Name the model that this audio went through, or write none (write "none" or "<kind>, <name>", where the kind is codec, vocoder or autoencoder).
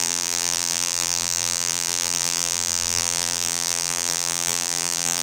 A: vocoder, BigVGAN v2